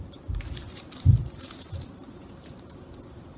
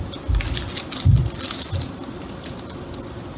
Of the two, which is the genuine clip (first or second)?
second